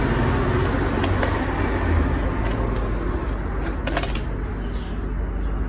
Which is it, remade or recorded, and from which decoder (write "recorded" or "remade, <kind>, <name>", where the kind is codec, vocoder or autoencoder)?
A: recorded